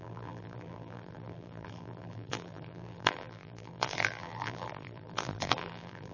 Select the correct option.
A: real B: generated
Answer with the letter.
B